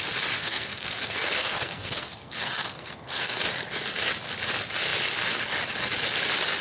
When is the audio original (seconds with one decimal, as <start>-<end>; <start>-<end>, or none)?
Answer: 0.0-0.4; 3.4-6.6